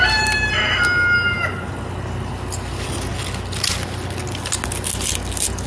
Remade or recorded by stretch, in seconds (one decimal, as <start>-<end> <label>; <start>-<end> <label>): 0.0-5.7 recorded